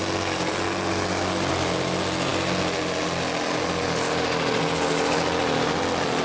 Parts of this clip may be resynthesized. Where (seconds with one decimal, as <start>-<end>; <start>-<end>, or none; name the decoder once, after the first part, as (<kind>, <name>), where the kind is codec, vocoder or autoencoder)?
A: none